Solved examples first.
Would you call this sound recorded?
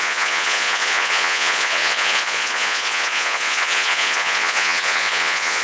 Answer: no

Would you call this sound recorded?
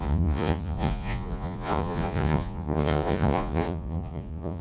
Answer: no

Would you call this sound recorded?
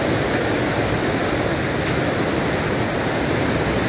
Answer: yes